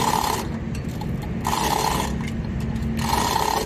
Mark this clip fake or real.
real